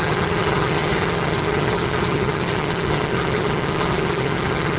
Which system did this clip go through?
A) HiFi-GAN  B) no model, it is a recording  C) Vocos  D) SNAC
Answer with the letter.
A